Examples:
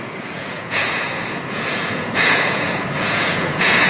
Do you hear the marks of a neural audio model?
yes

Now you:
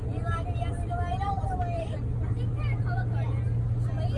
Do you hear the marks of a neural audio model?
no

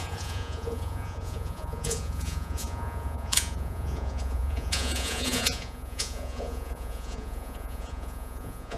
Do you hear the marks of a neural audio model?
yes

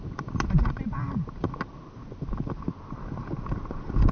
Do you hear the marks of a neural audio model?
no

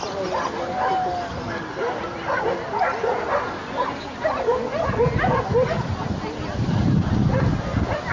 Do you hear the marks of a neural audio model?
no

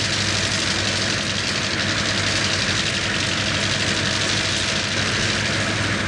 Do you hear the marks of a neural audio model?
no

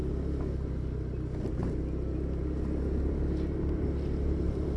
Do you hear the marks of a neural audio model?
no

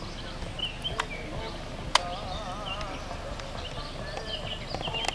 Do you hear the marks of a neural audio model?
no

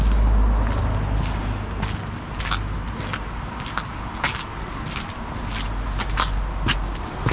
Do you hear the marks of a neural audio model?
no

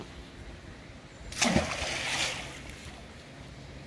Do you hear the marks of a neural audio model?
no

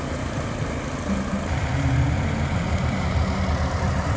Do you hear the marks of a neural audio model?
no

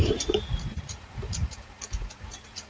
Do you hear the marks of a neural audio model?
yes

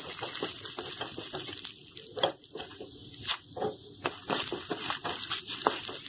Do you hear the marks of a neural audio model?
no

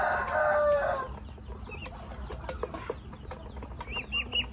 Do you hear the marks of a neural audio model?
no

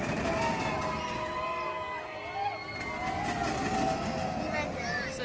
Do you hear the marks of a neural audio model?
no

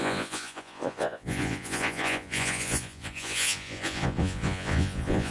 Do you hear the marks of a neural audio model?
yes